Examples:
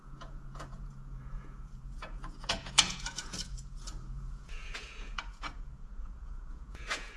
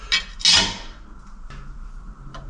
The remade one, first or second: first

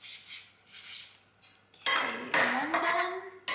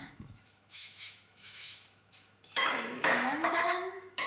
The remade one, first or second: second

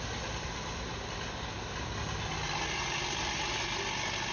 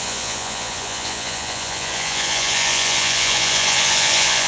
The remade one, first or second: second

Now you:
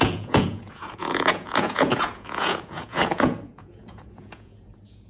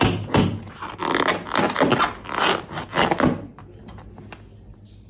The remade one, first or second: first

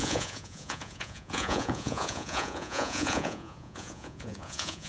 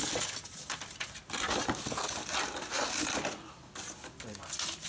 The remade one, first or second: first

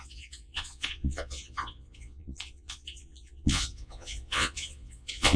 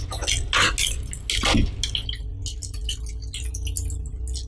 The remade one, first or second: first